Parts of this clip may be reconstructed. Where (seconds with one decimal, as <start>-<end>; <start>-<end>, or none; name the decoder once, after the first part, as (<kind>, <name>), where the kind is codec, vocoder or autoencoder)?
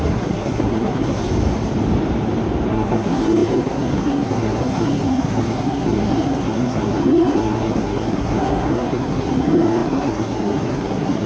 0.0-1.2 (codec, SNAC); 2.7-11.3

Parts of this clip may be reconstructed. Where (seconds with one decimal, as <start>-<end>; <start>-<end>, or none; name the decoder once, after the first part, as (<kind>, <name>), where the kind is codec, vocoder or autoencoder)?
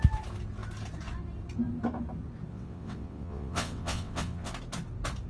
2.5-4.5 (vocoder, WaveNeXt)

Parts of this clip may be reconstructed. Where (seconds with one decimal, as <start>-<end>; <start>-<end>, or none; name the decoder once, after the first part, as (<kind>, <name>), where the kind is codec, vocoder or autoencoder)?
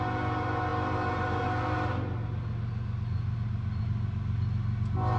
none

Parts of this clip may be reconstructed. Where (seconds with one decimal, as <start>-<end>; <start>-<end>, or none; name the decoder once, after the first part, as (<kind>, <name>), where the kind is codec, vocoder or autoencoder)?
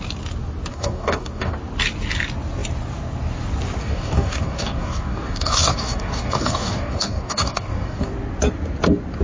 0.7-1.5 (codec, DAC); 3.8-8.1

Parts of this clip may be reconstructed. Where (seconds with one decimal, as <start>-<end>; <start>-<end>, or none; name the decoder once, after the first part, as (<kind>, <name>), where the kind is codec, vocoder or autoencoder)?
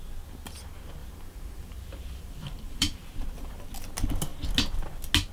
1.0-3.6 (vocoder, BigVGAN v2)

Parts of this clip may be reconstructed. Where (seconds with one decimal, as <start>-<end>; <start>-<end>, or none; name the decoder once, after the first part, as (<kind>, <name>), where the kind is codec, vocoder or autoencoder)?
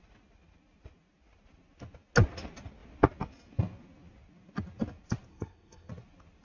5.3-5.9 (codec, SNAC)